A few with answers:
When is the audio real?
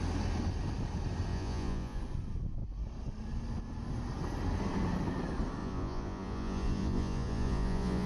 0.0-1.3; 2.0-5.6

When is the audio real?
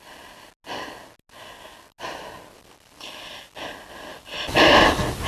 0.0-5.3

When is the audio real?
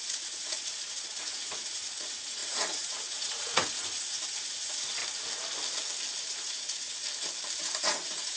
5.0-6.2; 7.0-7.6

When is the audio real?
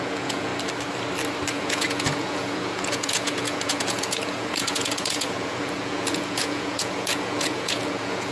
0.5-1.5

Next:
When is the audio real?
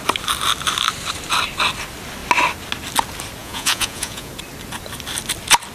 0.0-3.4; 4.3-5.7